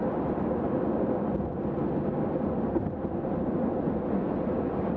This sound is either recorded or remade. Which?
recorded